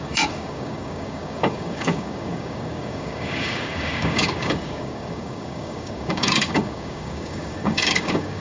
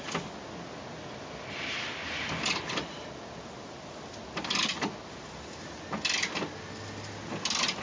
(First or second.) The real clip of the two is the second